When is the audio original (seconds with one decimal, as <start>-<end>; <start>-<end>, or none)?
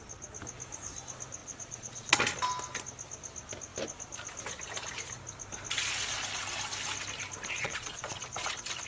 0.0-1.4; 2.2-7.6; 8.2-8.9